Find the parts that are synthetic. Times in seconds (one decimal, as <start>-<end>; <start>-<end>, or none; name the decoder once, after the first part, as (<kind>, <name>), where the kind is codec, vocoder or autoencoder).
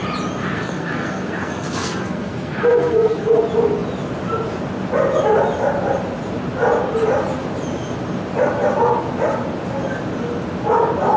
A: 0.4-3.4 (codec, SNAC)